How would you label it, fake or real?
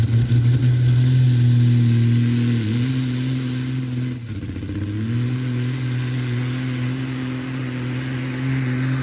real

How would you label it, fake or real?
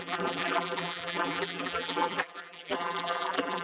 fake